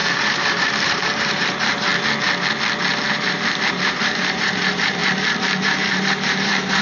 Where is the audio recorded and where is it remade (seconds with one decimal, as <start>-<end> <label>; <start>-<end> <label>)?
0.0-1.9 remade; 1.9-3.1 recorded; 3.1-5.0 remade; 5.0-5.6 recorded; 5.6-6.8 remade